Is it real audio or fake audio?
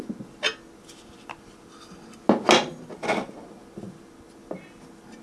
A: real